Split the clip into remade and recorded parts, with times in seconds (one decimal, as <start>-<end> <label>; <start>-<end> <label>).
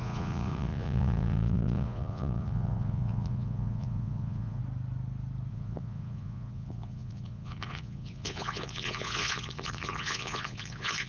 0.0-4.6 remade; 4.6-5.5 recorded; 5.5-11.1 remade